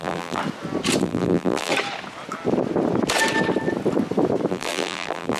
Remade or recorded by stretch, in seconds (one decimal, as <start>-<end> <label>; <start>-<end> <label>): 0.0-0.4 remade; 0.4-1.0 recorded; 1.0-1.7 remade; 1.7-4.5 recorded; 4.5-5.4 remade